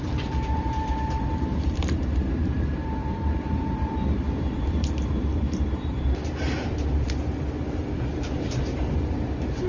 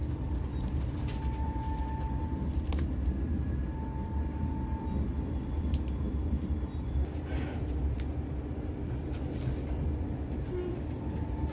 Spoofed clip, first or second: first